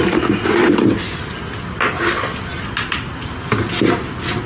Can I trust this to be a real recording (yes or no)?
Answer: yes